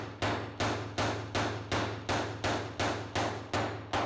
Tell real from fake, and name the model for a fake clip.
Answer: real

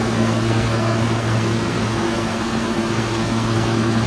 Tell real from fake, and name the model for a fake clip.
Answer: fake, codec, SNAC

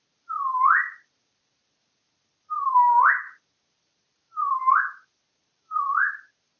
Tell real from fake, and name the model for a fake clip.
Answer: real